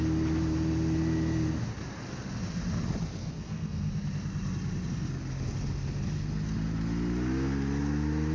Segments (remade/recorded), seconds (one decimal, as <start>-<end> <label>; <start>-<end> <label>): 0.0-3.2 recorded; 3.2-3.9 remade; 3.9-8.3 recorded